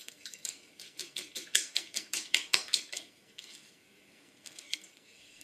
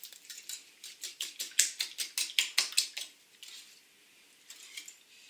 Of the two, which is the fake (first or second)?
first